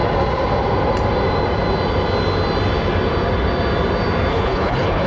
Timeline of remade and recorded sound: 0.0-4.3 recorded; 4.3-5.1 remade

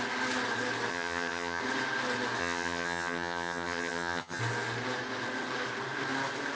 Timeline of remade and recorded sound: 0.0-0.9 recorded; 0.9-1.6 remade; 1.6-2.4 recorded; 2.4-4.4 remade; 4.4-6.6 recorded